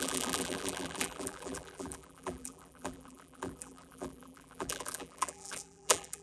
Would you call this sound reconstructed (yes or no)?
yes